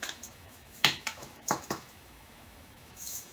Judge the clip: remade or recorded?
remade